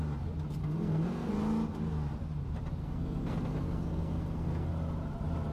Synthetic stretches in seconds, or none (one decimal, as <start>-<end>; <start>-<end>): 0.6-1.3; 2.8-4.7